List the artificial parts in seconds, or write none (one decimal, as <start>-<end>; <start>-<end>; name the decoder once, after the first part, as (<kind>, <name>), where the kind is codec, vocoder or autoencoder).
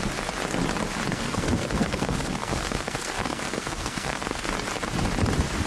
1.1-4.5 (codec, SNAC)